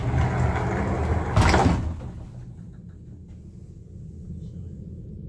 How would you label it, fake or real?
real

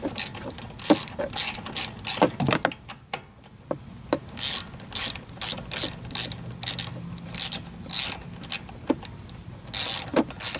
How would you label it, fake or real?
real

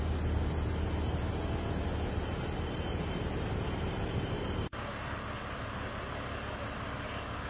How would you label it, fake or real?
real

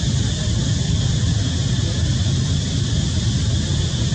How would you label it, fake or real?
real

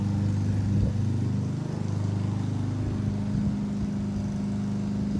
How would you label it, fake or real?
real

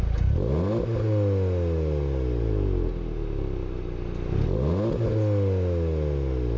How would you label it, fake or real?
real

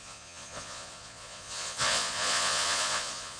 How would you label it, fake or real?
fake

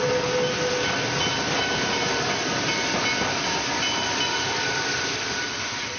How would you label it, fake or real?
real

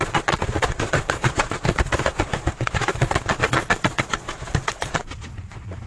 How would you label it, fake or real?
fake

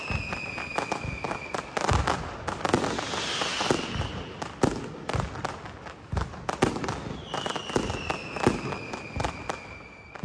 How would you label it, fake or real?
real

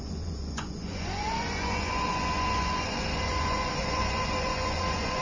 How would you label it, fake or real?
fake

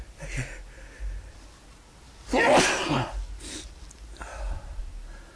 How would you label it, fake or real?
real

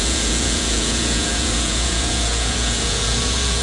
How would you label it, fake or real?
fake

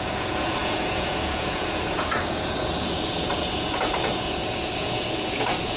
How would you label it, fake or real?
fake